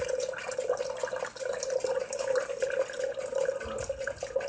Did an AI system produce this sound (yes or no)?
no